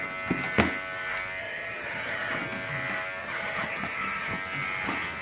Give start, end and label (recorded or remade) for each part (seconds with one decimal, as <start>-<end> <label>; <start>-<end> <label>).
0.0-1.4 recorded; 1.4-2.4 remade; 2.4-3.2 recorded; 3.2-4.3 remade; 4.3-5.2 recorded